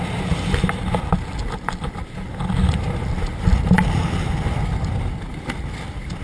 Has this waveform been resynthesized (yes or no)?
no